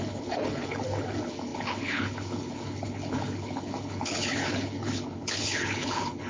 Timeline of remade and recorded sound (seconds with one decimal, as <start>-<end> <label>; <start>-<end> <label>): 0.0-6.3 remade